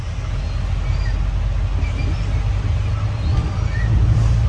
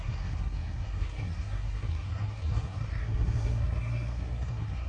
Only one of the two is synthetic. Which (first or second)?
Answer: second